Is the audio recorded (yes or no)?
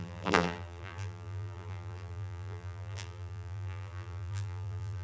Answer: no